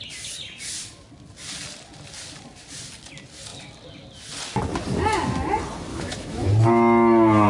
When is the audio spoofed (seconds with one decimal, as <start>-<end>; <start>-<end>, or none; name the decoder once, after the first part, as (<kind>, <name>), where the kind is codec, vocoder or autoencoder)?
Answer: 5.9-6.5 (autoencoder, DAC-VAE)